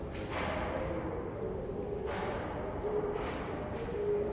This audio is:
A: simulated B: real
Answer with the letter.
B